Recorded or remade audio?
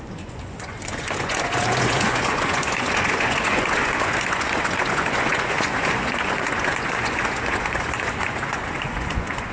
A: remade